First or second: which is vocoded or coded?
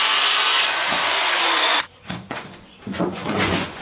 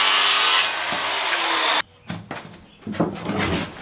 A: first